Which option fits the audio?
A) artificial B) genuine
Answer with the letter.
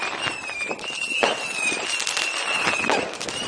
B